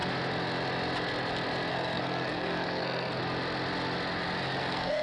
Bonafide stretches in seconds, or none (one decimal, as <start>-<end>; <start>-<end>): 0.0-1.7; 3.2-4.6